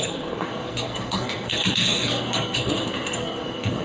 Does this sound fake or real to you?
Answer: fake